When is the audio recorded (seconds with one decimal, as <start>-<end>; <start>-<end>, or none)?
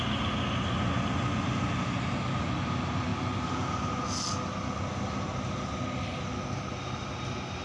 0.0-7.6